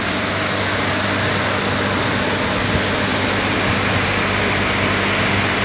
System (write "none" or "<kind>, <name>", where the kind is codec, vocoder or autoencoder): none